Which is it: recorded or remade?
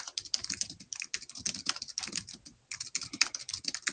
remade